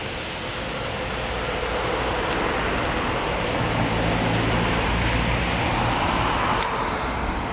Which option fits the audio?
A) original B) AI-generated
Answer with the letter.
A